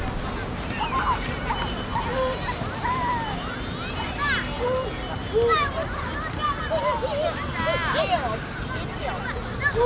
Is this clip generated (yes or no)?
no